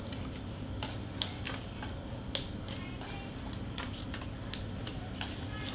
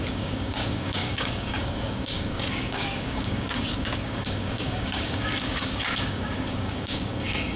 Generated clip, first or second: second